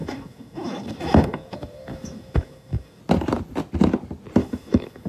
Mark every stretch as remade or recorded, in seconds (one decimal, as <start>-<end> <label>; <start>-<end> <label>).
0.0-3.0 remade; 3.0-4.4 recorded; 4.4-5.1 remade

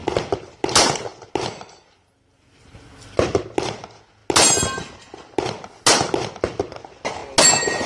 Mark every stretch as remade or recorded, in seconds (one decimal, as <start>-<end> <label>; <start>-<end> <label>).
0.0-7.9 recorded

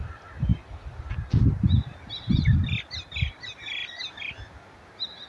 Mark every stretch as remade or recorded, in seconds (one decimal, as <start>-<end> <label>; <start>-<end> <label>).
0.0-5.3 recorded